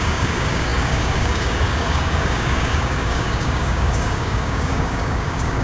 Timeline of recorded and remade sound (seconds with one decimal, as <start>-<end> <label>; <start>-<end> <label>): 0.0-5.6 remade

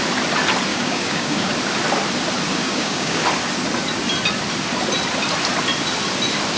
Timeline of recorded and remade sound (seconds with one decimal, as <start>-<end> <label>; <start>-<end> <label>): 0.0-0.7 recorded; 0.7-1.5 remade; 1.5-2.5 recorded; 2.5-3.2 remade; 3.2-6.6 recorded